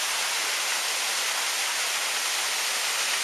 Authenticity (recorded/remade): recorded